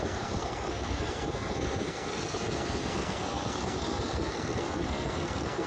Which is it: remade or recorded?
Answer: remade